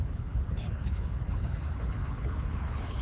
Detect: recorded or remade remade